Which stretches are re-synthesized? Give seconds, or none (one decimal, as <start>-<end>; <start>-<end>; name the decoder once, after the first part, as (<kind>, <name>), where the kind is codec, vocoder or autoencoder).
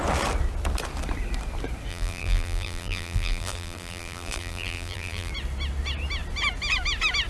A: 1.9-5.3 (vocoder, BigVGAN v2)